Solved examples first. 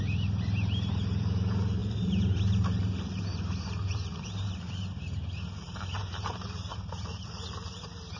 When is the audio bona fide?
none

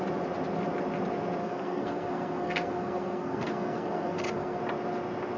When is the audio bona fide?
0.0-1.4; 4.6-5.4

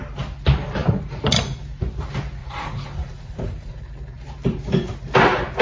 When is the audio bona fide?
0.0-2.4; 3.8-5.6

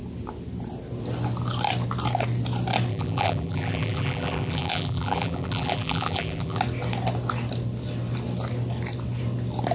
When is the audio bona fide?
0.0-2.9; 6.6-9.7

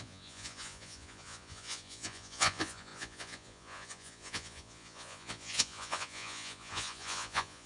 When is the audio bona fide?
none

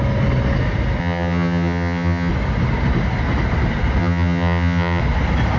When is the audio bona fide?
0.0-1.0; 2.3-4.0; 5.0-5.6

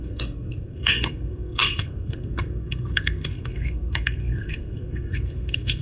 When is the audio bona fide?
none

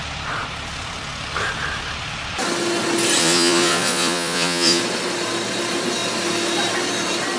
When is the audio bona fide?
0.0-3.2; 4.8-7.4